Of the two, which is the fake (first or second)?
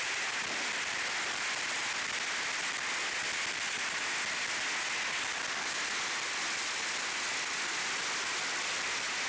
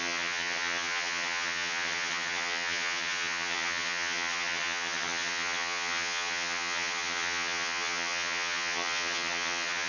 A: second